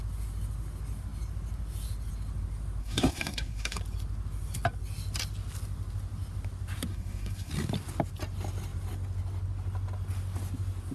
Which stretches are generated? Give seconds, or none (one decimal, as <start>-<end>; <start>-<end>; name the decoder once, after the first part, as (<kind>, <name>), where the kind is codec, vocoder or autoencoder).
2.8-3.8 (codec, SNAC); 6.9-7.5